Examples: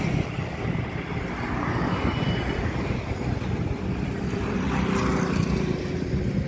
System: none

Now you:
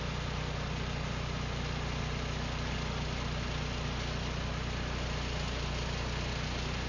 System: none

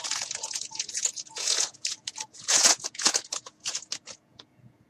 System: vocoder, Vocos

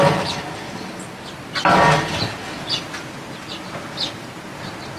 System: none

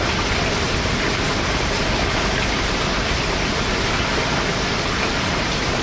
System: none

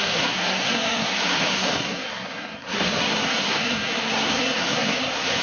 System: codec, SNAC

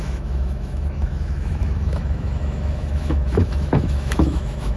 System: autoencoder, DAC-VAE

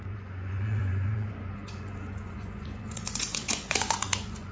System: vocoder, Vocos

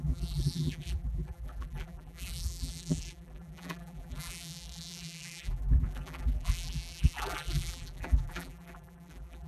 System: vocoder, BigVGAN v2